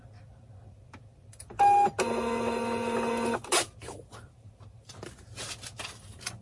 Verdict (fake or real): real